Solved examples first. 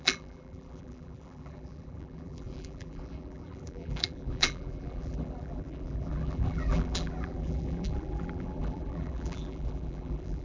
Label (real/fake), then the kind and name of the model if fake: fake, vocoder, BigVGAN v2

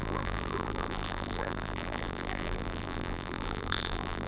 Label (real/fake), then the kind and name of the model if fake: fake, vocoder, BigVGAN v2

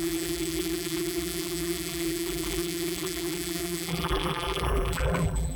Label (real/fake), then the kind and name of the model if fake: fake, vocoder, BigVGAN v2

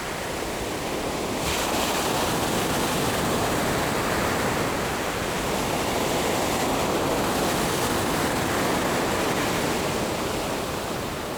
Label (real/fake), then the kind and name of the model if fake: real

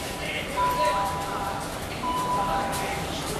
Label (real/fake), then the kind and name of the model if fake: fake, vocoder, BigVGAN v2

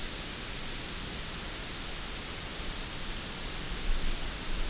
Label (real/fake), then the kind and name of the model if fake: real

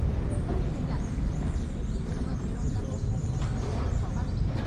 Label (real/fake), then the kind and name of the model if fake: fake, vocoder, BigVGAN v2